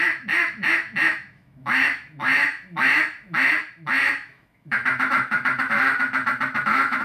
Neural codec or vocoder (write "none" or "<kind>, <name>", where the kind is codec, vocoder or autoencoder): autoencoder, DAC-VAE